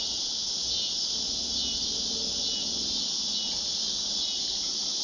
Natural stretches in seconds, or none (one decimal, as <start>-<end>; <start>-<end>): 0.0-5.0